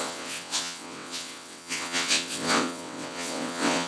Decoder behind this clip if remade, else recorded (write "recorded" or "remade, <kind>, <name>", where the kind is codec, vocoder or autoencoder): remade, vocoder, WaveNeXt